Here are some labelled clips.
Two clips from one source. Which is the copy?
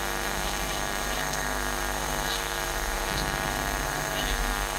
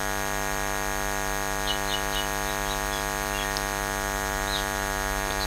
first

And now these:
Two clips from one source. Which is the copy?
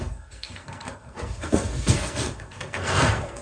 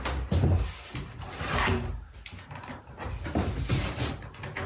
first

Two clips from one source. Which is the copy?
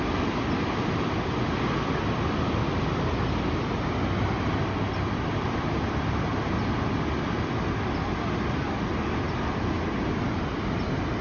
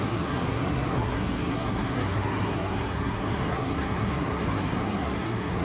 second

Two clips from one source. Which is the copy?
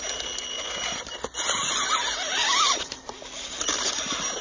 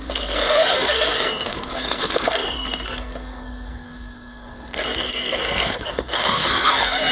second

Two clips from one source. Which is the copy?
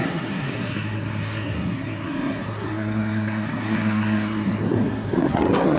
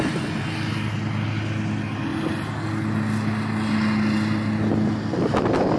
first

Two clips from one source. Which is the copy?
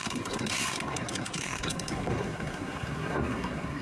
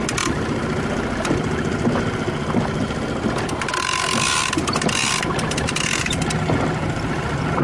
first